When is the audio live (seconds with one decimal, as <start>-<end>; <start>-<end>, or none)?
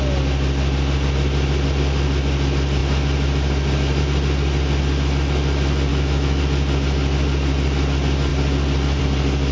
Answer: 0.0-5.9; 6.4-9.5